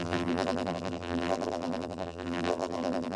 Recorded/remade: remade